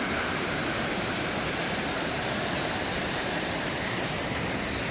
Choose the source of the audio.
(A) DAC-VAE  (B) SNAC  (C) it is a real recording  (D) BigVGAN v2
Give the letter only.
D